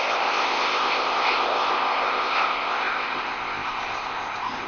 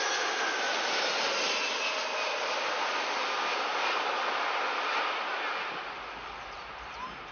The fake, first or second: first